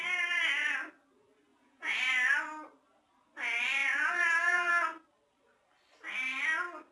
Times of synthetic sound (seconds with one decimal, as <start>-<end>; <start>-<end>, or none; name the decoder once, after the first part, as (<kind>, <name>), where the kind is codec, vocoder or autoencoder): 1.5-2.0 (vocoder, Vocos); 3.8-4.7